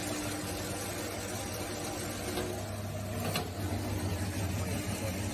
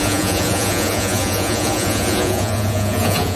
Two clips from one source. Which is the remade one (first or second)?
second